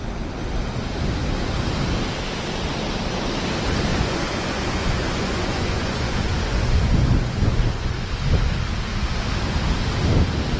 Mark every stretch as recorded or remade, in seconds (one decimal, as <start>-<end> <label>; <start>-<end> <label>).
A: 0.0-3.9 recorded; 3.9-8.1 remade; 8.1-10.6 recorded

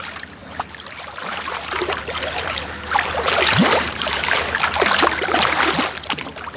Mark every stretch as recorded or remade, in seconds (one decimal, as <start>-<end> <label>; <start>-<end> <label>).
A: 0.0-0.4 recorded; 0.4-2.6 remade; 2.6-3.6 recorded; 3.6-4.3 remade; 4.3-6.6 recorded

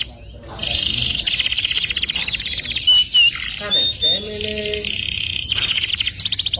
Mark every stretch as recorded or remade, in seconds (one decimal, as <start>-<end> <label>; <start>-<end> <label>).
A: 0.0-6.6 recorded

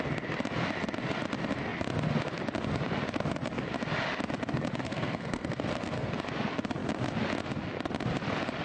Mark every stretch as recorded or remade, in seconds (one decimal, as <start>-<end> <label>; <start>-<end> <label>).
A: 0.0-4.8 recorded; 4.8-6.1 remade; 6.1-8.6 recorded

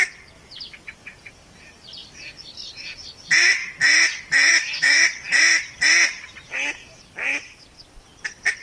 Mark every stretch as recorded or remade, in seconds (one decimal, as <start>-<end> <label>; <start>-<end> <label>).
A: 0.0-4.5 recorded; 4.5-5.1 remade; 5.1-8.6 recorded

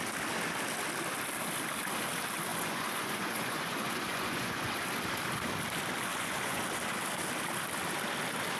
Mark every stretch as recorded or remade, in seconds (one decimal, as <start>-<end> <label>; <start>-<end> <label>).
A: 0.0-2.5 recorded; 2.5-4.8 remade; 4.8-6.1 recorded; 6.1-6.6 remade; 6.6-8.6 recorded